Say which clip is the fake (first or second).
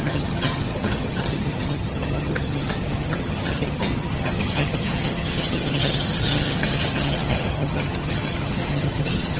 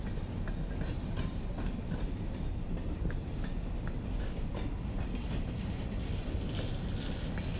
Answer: first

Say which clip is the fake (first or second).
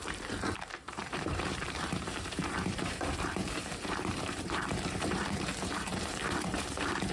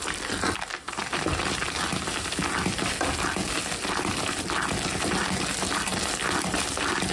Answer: first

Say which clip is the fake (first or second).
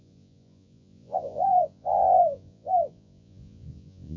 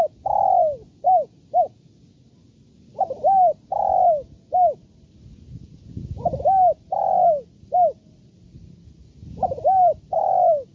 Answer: first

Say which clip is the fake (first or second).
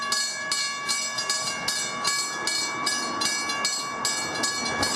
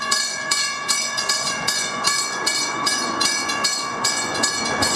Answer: second